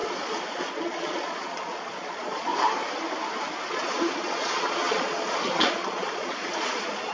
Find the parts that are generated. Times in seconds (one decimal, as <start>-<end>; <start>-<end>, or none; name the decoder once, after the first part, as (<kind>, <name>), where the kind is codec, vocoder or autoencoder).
0.0-2.5 (vocoder, Vocos); 3.7-7.1